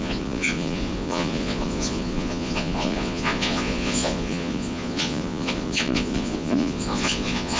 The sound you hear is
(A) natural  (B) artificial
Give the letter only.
B